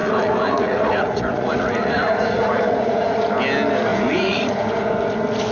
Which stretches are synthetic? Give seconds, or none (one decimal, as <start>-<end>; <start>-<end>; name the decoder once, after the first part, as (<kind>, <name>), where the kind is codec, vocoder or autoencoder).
0.0-3.3 (vocoder, Vocos); 3.9-4.5

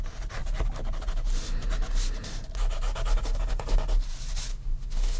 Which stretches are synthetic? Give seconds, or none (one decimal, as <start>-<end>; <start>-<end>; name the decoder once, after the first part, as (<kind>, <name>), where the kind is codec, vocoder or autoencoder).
4.5-5.2 (autoencoder, DAC-VAE)

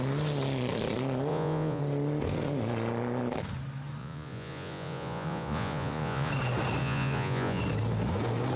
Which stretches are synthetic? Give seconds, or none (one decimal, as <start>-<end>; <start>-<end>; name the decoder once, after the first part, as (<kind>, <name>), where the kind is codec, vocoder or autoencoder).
1.3-1.8 (vocoder, Vocos); 4.0-6.3; 6.8-7.6